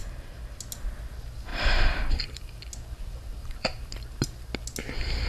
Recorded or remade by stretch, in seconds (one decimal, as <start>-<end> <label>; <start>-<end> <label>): 0.0-0.6 remade; 0.6-1.5 recorded; 1.5-2.6 remade; 2.6-3.4 recorded; 3.4-3.9 remade; 3.9-5.3 recorded